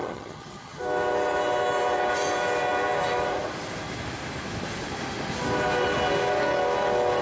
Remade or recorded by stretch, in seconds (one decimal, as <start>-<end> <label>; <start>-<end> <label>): 0.0-0.8 remade; 0.8-7.2 recorded

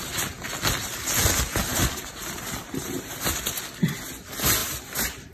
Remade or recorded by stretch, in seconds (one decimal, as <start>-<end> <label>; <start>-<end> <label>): 0.0-1.7 recorded; 1.7-2.8 remade; 2.8-4.6 recorded; 4.6-5.3 remade

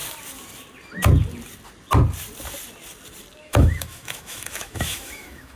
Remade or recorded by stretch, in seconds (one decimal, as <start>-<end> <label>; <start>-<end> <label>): 0.0-3.4 recorded; 3.4-5.6 remade

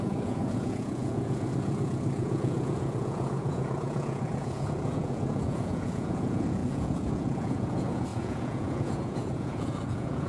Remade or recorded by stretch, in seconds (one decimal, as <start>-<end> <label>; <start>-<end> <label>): 0.0-10.3 remade

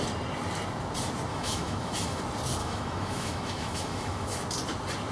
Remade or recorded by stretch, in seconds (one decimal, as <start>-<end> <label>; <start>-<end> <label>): 0.0-1.3 recorded; 1.3-2.2 remade; 2.2-2.6 recorded; 2.6-4.4 remade; 4.4-5.1 recorded

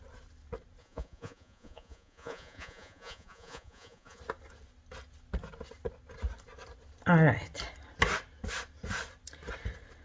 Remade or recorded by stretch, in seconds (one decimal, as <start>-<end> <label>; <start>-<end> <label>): 0.0-0.8 recorded; 0.8-4.2 remade; 4.2-10.0 recorded

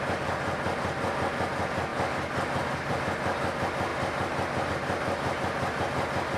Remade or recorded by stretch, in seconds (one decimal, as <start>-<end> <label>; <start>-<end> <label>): 0.0-6.4 recorded